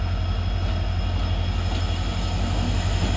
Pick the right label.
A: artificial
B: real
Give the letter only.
B